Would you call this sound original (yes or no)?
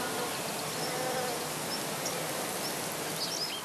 yes